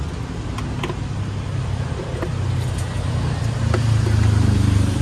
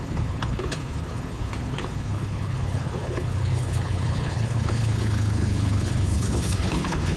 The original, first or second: first